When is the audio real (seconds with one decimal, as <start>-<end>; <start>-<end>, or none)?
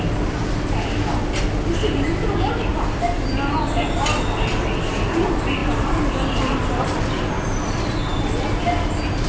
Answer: 0.0-2.7; 3.3-5.6; 7.3-9.3